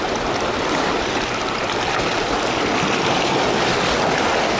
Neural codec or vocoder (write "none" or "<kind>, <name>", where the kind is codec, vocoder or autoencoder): none